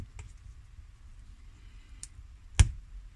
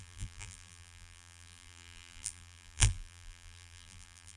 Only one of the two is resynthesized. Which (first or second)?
second